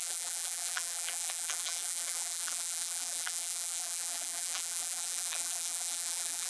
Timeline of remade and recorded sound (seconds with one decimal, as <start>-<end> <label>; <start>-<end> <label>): 0.0-6.5 remade